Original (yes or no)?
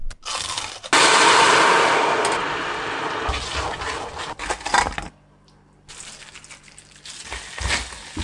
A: yes